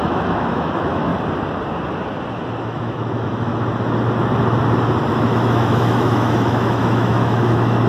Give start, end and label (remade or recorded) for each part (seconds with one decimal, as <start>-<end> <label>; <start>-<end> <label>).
0.0-1.1 remade; 1.1-2.6 recorded; 2.6-3.5 remade; 3.5-5.1 recorded; 5.1-7.9 remade